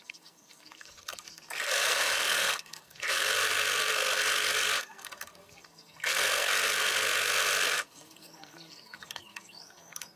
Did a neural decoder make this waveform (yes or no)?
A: yes